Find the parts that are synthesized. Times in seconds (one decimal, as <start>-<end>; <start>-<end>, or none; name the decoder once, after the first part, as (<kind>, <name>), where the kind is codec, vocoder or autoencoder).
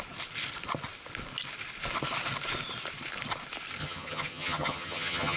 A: 3.8-5.4 (vocoder, HiFi-GAN)